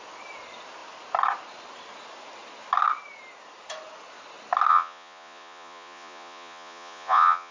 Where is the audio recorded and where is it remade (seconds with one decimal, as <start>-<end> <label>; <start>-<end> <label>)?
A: 0.0-4.7 recorded; 4.7-7.5 remade